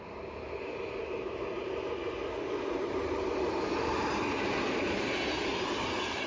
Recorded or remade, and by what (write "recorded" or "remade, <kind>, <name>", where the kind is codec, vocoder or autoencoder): recorded